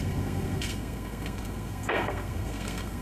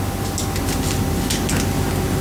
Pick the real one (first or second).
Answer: second